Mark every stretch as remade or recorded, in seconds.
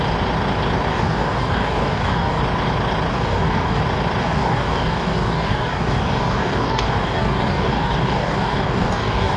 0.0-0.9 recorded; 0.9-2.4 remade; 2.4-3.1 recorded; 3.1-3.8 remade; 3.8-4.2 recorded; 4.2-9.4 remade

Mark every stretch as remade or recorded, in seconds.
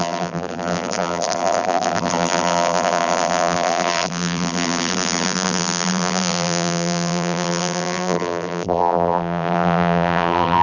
0.0-10.6 remade